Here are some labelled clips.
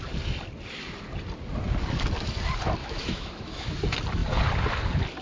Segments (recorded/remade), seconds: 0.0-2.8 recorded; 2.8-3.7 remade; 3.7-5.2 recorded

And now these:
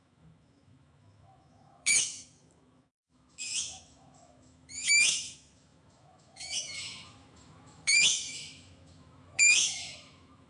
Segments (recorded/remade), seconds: 0.0-10.5 remade

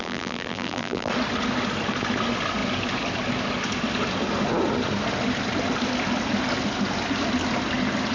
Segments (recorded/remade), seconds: 0.0-1.1 remade; 1.1-8.1 recorded

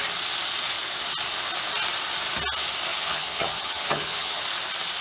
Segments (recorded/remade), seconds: 0.0-2.9 recorded; 2.9-4.4 remade; 4.4-5.0 recorded

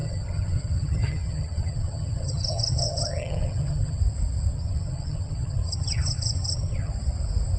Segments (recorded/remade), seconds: 0.0-4.0 remade; 4.0-4.5 recorded; 4.5-6.9 remade; 6.9-7.6 recorded

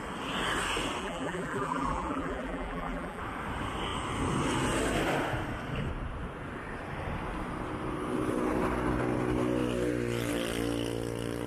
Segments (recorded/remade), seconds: 0.0-1.0 recorded; 1.0-3.2 remade; 3.2-11.5 recorded

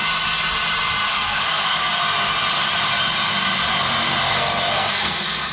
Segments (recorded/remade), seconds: 0.0-1.1 recorded; 1.1-1.9 remade; 1.9-4.3 recorded; 4.3-5.5 remade